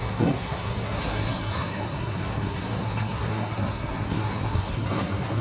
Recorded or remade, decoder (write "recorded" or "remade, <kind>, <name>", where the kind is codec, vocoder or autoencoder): remade, codec, SNAC